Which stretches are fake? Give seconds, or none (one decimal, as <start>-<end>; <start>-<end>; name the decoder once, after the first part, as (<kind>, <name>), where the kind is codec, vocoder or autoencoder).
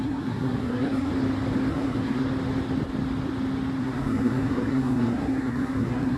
0.0-1.1 (codec, SNAC); 1.7-2.3; 3.8-6.2